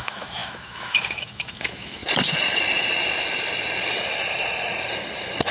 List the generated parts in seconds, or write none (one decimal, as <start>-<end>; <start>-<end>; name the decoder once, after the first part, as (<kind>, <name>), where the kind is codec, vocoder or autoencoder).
0.0-2.0 (autoencoder, DAC-VAE)